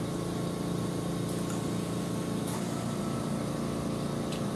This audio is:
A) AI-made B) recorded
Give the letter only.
B